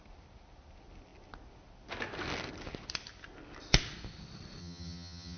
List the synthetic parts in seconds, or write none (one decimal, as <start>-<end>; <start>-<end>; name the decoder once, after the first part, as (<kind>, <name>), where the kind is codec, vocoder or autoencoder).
4.6-5.4 (vocoder, HiFi-GAN)